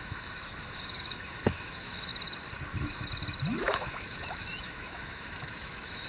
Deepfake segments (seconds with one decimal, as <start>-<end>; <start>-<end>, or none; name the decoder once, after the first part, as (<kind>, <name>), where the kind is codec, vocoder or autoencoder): 0.0-2.1 (autoencoder, DAC-VAE); 3.6-6.1